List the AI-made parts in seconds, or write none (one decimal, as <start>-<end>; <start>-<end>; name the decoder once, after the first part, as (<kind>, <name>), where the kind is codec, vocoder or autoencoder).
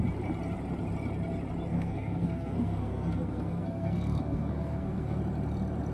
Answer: 1.7-5.2 (codec, SNAC)